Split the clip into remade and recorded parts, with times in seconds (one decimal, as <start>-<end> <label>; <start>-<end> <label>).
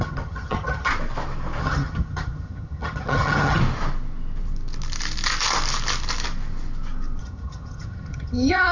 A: 0.0-0.9 remade; 0.9-1.6 recorded; 1.6-3.6 remade; 3.6-7.2 recorded; 7.2-8.7 remade